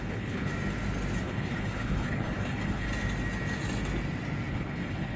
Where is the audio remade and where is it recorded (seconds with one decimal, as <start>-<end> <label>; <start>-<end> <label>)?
0.0-0.5 remade; 0.5-1.2 recorded; 1.2-2.9 remade; 2.9-4.5 recorded; 4.5-5.2 remade